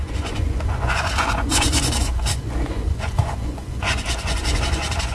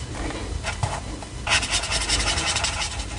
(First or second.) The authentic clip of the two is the second